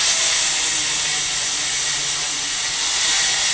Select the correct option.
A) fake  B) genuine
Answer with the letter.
A